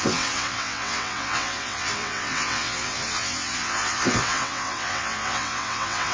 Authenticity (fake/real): fake